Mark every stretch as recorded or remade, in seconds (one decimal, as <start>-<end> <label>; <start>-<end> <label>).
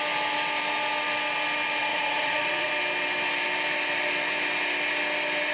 0.0-1.9 recorded; 1.9-2.7 remade; 2.7-5.5 recorded